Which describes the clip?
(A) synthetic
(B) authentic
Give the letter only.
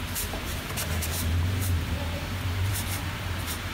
A